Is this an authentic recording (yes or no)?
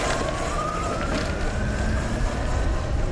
yes